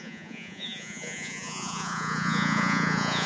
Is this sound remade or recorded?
remade